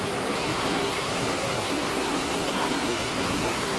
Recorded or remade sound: remade